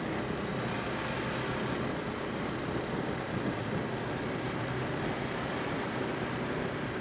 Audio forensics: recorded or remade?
recorded